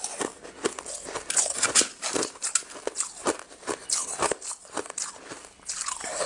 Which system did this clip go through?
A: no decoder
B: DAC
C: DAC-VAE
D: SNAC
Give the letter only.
A